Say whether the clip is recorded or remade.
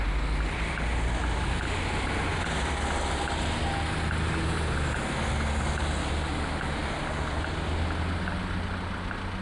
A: recorded